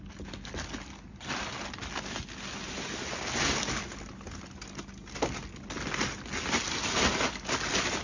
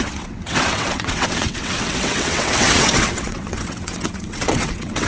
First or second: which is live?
first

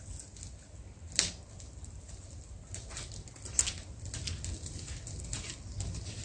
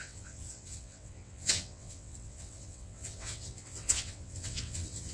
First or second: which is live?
first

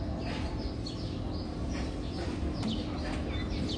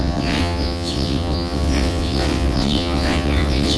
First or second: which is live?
first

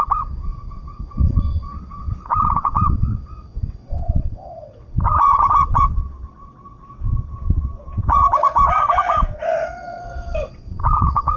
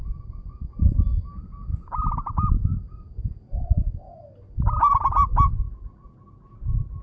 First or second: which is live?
second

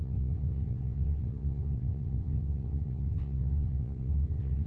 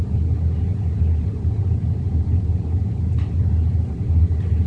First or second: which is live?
second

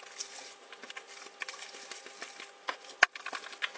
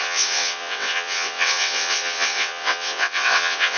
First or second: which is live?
first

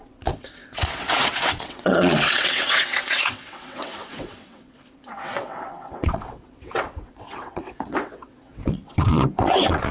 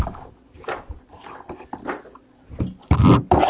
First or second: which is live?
second